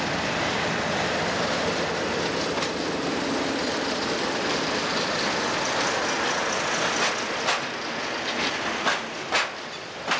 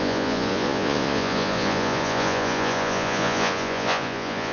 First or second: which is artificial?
second